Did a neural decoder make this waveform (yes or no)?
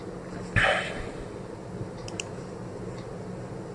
no